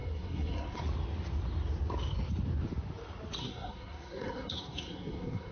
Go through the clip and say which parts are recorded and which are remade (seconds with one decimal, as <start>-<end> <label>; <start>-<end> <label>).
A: 0.0-0.8 remade; 0.8-3.4 recorded; 3.4-5.5 remade